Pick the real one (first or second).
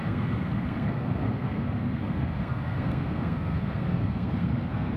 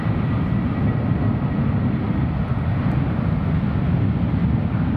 second